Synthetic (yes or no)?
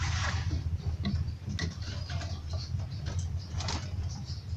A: no